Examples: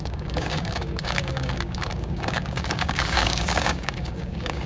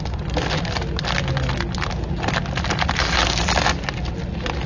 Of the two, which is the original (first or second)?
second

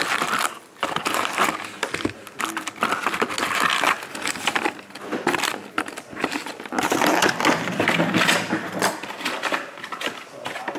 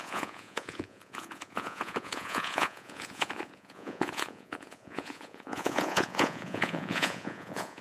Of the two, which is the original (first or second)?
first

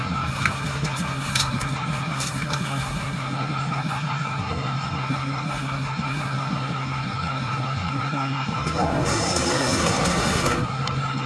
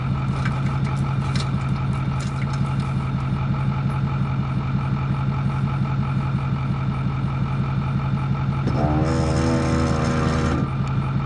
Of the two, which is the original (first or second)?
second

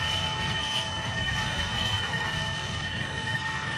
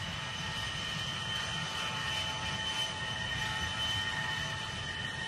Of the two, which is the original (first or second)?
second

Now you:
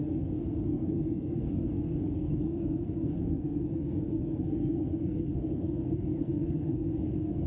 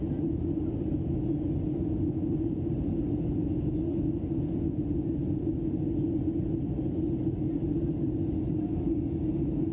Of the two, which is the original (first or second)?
second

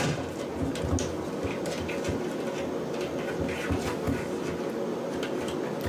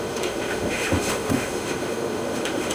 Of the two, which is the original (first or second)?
first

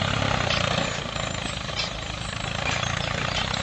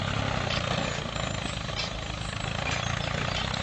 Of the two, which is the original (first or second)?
second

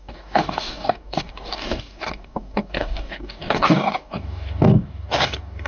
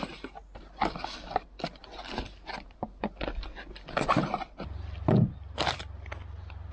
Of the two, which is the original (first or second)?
second